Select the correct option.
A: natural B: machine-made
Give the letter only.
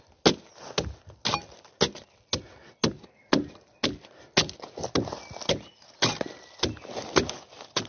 A